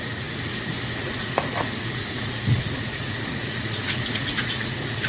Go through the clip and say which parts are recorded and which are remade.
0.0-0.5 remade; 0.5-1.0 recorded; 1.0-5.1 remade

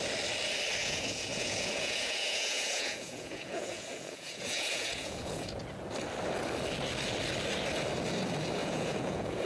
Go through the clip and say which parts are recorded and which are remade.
0.0-0.8 recorded; 0.8-5.6 remade; 5.6-8.6 recorded; 8.6-9.5 remade

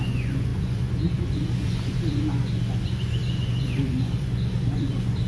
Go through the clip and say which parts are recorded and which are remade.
0.0-5.3 remade